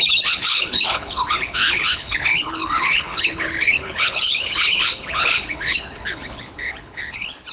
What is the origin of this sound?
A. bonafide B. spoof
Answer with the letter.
B